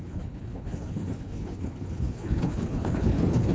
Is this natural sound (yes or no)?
no